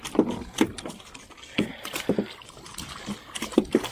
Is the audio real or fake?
real